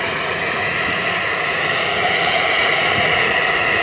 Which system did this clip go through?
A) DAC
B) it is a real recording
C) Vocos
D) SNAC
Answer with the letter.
C